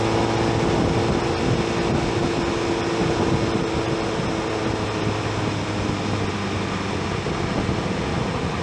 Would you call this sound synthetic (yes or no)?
no